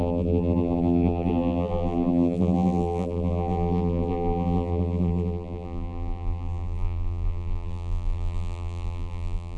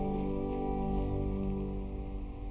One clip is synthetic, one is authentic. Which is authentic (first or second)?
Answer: second